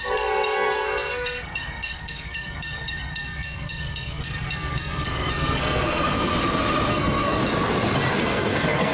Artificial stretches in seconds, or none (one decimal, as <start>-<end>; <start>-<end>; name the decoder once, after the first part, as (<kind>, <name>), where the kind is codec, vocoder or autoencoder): 0.0-6.3 (codec, SNAC); 6.9-7.4; 8.2-8.9